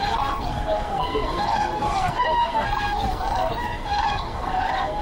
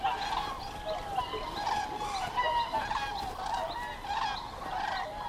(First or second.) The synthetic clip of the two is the first